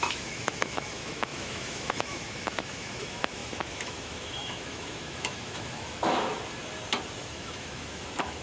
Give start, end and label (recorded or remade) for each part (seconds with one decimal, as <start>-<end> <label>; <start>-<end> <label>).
0.0-6.3 remade; 6.3-7.2 recorded; 7.2-8.4 remade